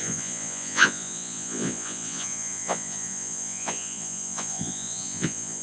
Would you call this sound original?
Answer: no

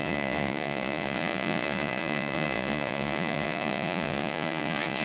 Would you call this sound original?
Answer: no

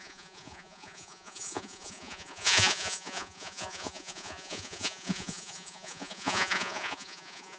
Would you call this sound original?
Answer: no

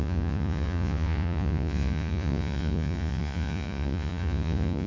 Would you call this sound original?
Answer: no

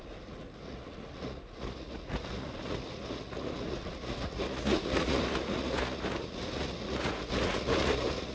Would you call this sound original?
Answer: no